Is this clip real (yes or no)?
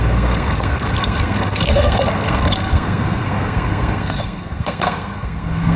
no